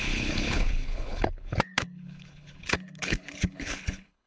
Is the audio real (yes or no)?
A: no